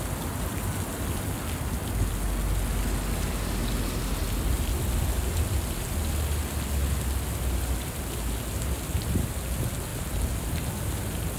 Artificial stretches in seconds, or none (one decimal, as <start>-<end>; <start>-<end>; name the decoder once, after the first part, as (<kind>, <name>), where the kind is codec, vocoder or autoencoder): none